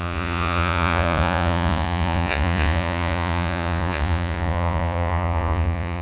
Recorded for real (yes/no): no